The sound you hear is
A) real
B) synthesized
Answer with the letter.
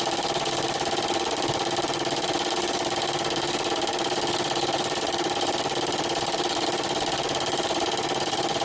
B